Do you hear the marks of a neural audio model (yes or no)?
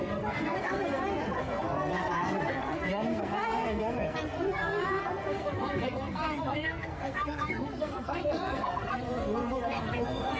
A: yes